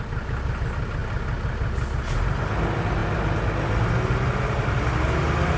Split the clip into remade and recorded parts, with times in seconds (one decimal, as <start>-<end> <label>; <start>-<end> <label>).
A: 0.0-5.6 recorded